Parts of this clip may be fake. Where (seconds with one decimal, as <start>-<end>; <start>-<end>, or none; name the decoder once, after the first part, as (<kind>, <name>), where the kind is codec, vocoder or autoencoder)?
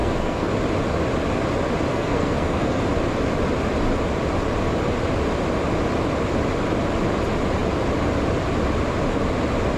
0.0-0.5 (codec, SNAC); 1.9-2.8